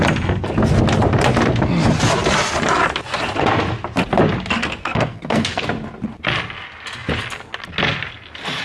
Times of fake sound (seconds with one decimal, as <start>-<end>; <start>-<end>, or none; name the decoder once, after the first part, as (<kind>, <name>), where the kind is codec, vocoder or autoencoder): 4.8-5.6 (codec, SNAC)